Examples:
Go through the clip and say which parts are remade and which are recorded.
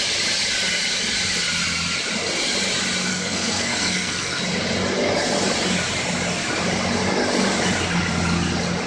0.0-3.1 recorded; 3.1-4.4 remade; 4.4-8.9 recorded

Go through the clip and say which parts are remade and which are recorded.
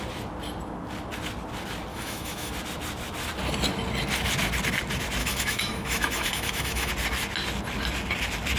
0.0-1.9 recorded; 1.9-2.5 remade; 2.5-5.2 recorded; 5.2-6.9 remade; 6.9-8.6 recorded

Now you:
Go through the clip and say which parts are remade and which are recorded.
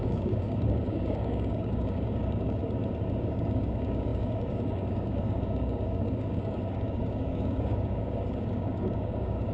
0.0-2.6 remade; 2.6-3.2 recorded; 3.2-9.5 remade